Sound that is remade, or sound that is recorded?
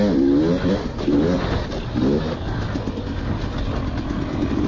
recorded